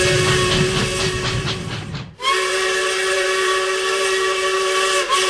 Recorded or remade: remade